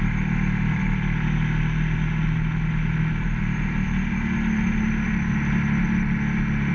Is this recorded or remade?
recorded